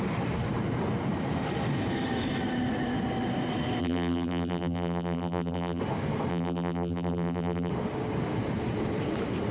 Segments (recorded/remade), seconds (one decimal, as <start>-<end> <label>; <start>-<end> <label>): 0.0-3.8 recorded; 3.8-5.8 remade; 5.8-6.3 recorded; 6.3-7.7 remade; 7.7-9.5 recorded